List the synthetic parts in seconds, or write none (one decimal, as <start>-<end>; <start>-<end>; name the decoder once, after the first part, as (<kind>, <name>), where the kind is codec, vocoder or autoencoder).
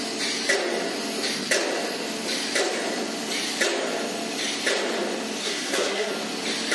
5.4-6.1 (codec, SNAC)